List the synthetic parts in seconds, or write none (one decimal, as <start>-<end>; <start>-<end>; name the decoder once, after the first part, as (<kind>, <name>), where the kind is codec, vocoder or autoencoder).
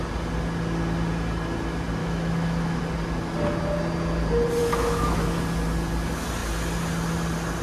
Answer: 2.0-2.8 (autoencoder, DAC-VAE); 4.6-5.3